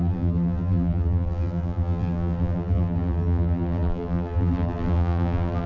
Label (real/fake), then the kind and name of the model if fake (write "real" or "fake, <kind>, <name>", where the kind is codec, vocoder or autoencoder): fake, vocoder, BigVGAN v2